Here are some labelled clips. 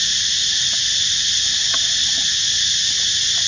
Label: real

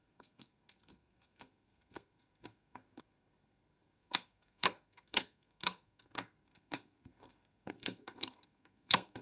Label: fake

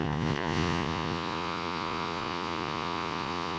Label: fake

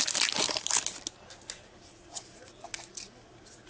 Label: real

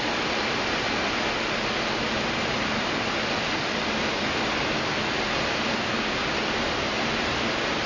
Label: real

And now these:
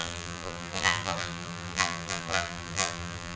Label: fake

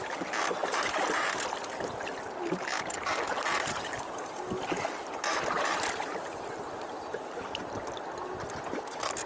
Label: real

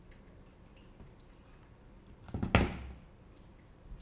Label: real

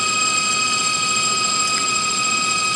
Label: fake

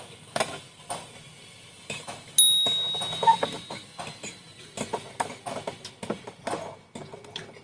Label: real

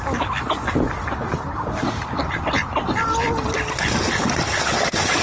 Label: real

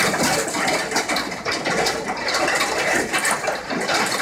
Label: real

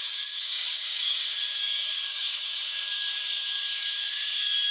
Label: fake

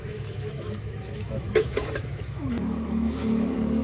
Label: fake